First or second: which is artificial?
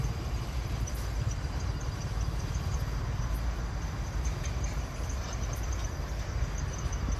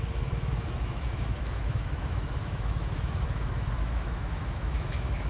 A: second